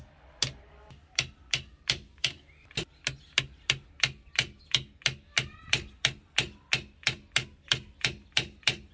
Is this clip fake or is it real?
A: real